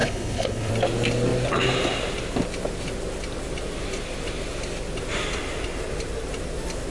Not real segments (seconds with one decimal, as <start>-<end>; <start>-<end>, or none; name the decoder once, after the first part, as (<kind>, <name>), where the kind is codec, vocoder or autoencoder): 0.0-0.7 (codec, HILCodec)